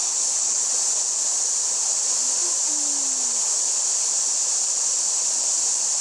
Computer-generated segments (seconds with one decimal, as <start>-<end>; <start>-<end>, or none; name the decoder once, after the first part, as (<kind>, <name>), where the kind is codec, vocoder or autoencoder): 0.0-0.7 (codec, HILCodec)

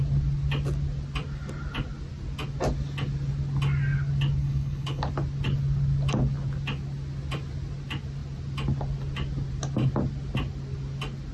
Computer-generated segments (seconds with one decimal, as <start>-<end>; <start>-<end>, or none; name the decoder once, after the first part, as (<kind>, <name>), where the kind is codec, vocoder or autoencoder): 4.4-5.0 (codec, HILCodec)

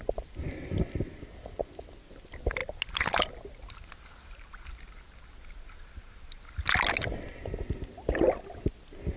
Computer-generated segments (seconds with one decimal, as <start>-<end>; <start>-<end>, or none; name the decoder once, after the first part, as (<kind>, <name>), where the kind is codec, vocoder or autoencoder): none

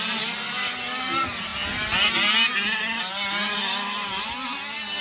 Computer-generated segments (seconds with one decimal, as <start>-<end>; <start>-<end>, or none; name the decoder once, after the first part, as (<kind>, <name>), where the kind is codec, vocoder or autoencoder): none